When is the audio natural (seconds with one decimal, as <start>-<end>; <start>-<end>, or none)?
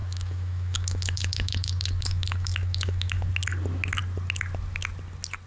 3.3-5.5